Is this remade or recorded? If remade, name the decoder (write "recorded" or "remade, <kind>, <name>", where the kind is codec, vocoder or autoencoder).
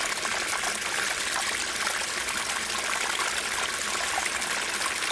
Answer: recorded